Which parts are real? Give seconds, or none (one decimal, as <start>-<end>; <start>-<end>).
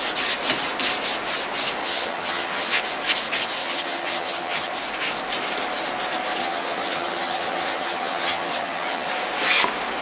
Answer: 0.0-1.8; 2.8-3.6; 4.7-6.4; 9.1-10.0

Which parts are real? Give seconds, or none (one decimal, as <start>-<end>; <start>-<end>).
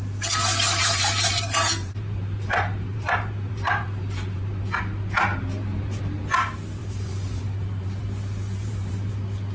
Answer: 0.0-0.8; 4.6-5.3; 6.2-6.8; 8.0-8.6; 9.1-9.5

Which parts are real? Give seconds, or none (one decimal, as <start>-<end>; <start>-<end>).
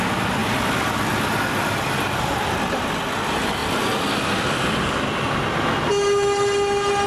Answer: 0.0-7.1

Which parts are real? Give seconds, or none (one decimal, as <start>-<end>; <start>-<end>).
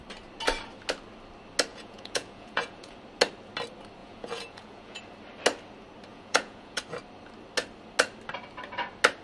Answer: 0.0-1.7; 2.9-4.0; 5.0-6.1; 6.8-9.2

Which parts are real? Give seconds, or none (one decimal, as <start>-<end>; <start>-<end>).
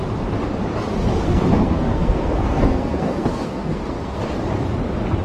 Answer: 0.0-1.1; 4.2-5.2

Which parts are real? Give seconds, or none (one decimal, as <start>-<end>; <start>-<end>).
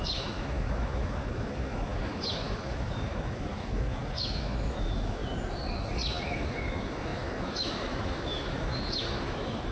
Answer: 5.2-6.2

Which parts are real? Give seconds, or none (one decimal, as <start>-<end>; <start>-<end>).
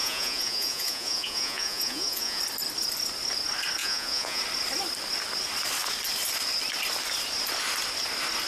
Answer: 2.4-3.8; 4.4-8.5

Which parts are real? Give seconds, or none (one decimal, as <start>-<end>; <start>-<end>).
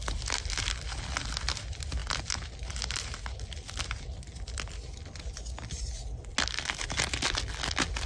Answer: 0.0-8.1